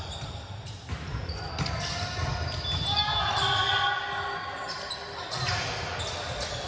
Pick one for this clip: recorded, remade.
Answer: recorded